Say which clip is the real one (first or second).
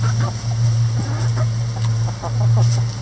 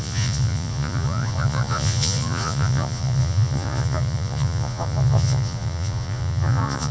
first